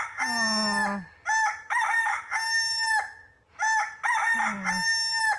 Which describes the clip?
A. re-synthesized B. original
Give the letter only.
B